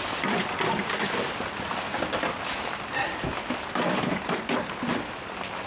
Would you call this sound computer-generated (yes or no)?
no